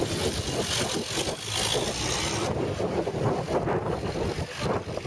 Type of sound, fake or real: real